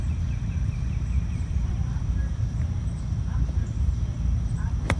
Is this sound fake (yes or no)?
yes